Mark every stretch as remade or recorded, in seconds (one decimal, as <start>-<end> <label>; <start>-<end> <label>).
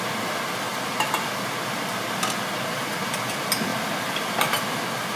0.0-3.7 recorded; 3.7-4.4 remade; 4.4-5.2 recorded